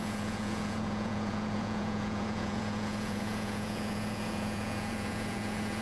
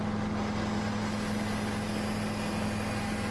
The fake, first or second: first